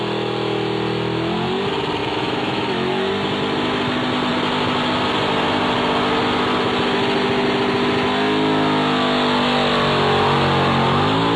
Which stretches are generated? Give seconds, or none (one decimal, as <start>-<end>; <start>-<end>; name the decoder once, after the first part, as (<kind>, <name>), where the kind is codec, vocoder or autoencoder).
2.0-3.1 (autoencoder, DAC-VAE)